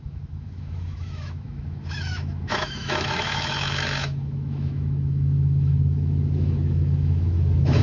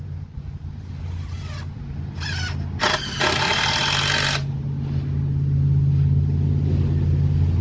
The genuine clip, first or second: second